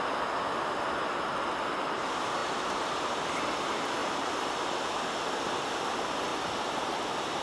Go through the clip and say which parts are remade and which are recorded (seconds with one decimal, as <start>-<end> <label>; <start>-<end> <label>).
0.0-2.4 recorded; 2.4-3.1 remade; 3.1-4.0 recorded; 4.0-5.8 remade; 5.8-6.3 recorded; 6.3-7.4 remade